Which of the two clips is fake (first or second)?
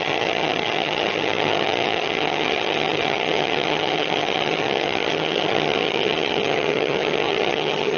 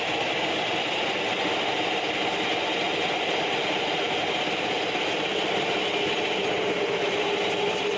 first